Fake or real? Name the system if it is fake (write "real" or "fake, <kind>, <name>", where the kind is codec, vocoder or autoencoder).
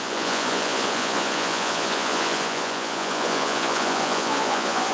fake, vocoder, Vocos